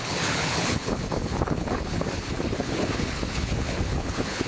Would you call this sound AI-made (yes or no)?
yes